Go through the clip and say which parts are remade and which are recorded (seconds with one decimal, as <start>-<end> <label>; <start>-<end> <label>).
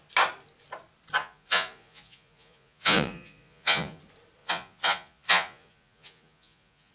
0.0-1.2 recorded; 1.2-4.0 remade; 4.0-4.4 recorded; 4.4-6.9 remade